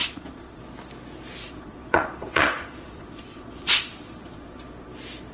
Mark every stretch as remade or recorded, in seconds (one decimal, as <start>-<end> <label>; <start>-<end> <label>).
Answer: 0.0-0.6 remade; 0.6-1.4 recorded; 1.4-4.6 remade; 4.6-5.3 recorded